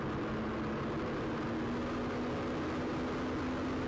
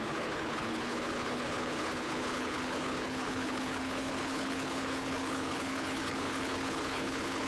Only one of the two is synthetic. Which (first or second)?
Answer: second